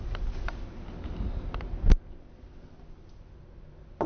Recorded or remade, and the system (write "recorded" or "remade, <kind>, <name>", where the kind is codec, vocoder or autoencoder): recorded